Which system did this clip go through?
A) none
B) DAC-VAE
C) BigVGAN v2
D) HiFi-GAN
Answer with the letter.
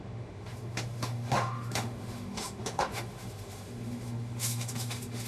B